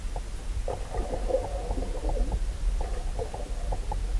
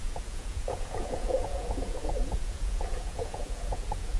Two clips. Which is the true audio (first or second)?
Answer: first